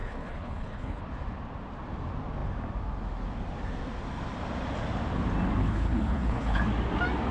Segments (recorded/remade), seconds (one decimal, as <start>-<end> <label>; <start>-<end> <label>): 0.0-1.0 remade; 1.0-5.6 recorded; 5.6-6.6 remade; 6.6-7.3 recorded